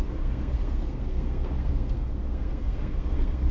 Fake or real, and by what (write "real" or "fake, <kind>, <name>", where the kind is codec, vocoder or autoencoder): fake, codec, SNAC